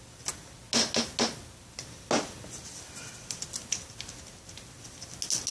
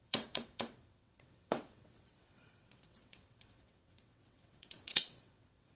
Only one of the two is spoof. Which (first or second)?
second